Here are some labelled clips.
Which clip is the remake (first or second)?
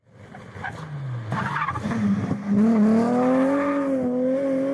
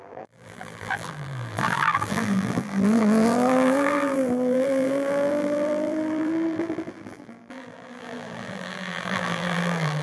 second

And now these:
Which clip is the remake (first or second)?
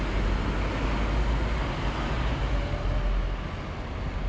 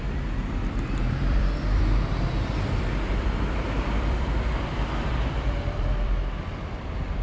second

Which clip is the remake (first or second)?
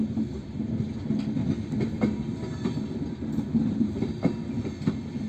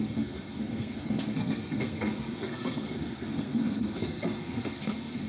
second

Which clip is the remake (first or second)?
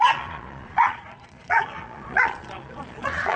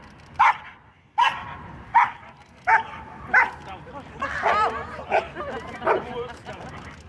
first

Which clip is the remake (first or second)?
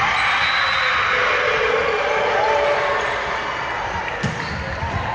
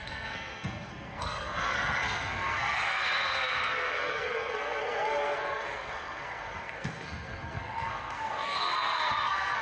second